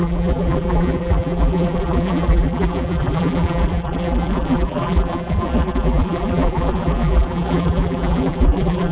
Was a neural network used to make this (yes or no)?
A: yes